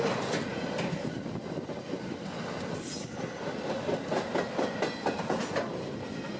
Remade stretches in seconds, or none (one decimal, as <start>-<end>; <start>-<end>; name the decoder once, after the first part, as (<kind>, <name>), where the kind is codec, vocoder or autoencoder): none